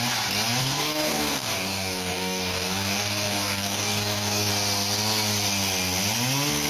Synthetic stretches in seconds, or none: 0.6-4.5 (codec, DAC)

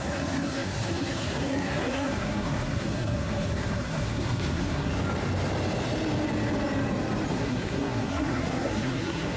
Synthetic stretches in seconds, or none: 0.0-4.9 (codec, SNAC); 7.3-9.4